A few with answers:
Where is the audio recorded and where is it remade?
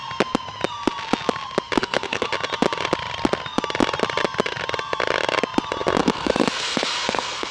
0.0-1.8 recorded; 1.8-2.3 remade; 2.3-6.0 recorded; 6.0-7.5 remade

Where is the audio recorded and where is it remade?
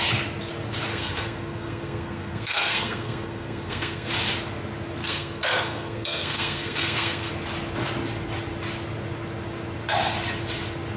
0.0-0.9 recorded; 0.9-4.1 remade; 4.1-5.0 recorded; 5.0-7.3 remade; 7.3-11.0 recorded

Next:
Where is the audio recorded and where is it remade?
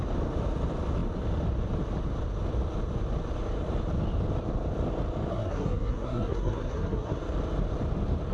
0.0-5.3 recorded; 5.3-7.2 remade; 7.2-8.3 recorded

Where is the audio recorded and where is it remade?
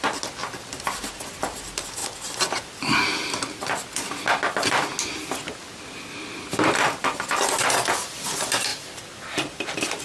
0.0-10.0 recorded